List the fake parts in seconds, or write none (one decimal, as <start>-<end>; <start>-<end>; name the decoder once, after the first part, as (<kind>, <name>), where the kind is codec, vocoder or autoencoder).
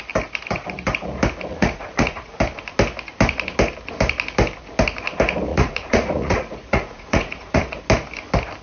1.5-2.4 (vocoder, Vocos); 5.5-7.8